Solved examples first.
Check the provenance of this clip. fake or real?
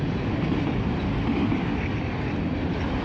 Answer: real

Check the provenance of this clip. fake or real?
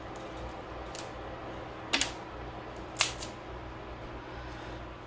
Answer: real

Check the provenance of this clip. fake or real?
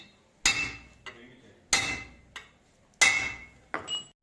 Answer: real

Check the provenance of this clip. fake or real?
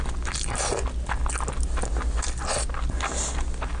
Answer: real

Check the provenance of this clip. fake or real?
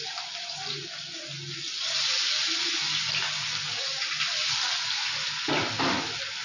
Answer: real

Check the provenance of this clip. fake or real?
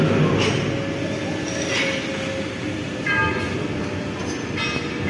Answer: real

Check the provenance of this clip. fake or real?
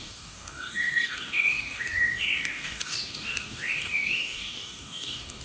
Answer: fake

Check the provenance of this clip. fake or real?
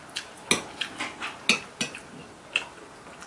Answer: real